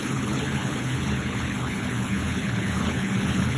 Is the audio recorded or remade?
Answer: remade